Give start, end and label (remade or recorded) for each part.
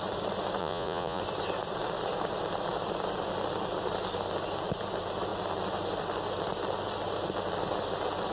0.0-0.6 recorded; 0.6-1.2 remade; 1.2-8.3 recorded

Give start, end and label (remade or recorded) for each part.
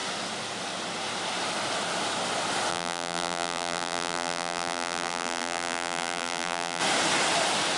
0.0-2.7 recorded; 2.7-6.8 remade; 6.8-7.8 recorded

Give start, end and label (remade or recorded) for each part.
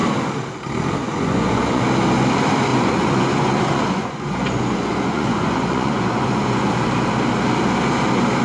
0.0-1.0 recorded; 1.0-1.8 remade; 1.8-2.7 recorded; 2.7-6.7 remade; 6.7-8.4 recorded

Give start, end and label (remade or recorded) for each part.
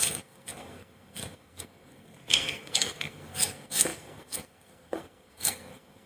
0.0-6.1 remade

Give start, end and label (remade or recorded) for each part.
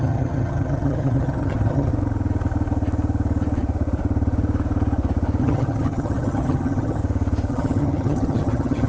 0.0-1.9 remade; 1.9-5.4 recorded; 5.4-7.0 remade; 7.0-7.5 recorded; 7.5-8.9 remade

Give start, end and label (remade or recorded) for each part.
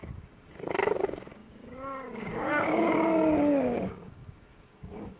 0.0-5.2 remade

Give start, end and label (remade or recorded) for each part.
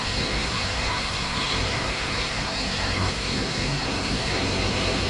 0.0-5.1 remade